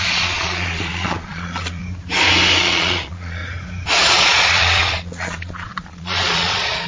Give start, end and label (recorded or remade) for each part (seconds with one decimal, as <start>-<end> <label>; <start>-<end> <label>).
0.0-1.8 remade; 1.8-2.6 recorded; 2.6-3.4 remade; 3.4-4.1 recorded; 4.1-6.9 remade